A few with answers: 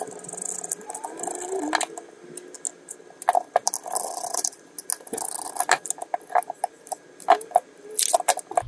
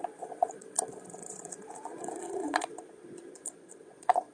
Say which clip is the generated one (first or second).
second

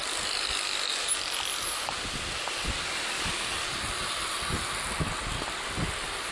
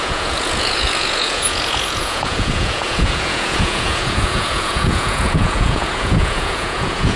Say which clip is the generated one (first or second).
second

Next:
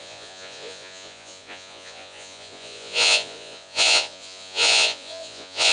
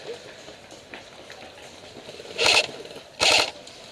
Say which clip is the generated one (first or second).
first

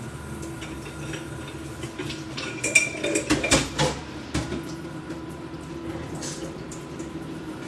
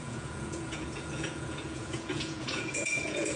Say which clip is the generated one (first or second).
second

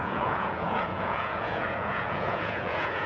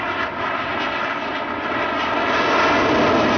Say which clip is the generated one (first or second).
first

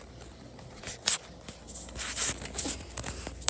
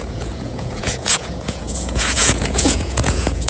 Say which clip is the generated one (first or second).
second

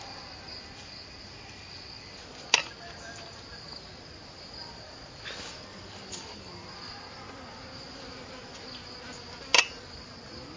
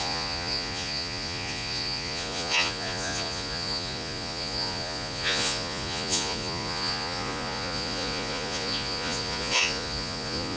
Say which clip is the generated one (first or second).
second